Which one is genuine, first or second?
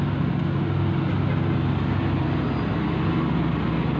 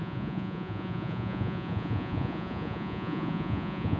first